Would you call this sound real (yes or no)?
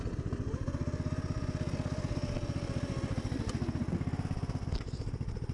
yes